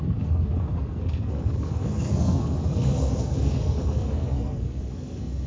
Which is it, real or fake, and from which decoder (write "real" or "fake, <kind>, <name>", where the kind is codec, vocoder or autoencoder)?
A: fake, codec, SNAC